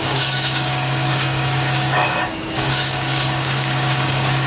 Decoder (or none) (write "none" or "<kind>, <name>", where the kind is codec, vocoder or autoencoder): codec, DAC